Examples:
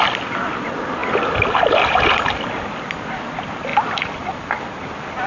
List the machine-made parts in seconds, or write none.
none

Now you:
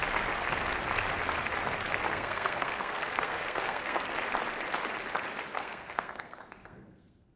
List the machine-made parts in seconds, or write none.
2.1-4.1; 5.5-7.4

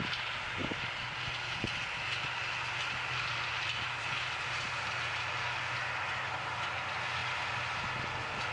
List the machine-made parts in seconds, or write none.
none

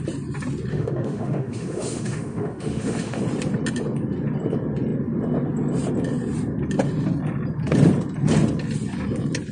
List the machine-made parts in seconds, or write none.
0.7-3.2

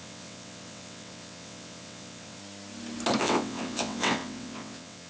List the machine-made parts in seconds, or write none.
0.0-2.4; 3.2-5.1

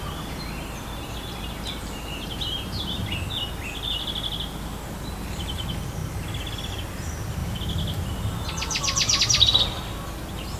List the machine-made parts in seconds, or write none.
1.0-3.0